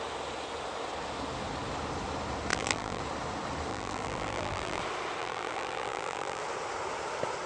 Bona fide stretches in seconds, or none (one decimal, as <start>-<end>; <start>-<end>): 0.0-2.5; 3.0-3.7; 4.8-5.2; 6.4-7.5